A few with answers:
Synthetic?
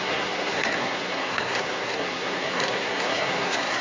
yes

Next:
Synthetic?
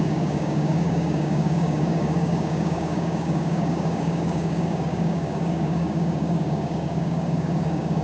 yes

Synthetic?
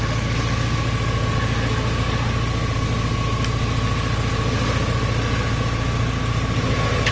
no